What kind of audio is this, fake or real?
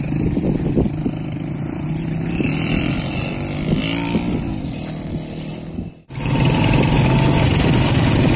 real